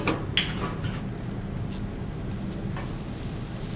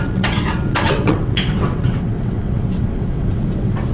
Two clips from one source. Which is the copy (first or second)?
second